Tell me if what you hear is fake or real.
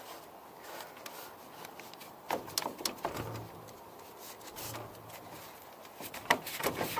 real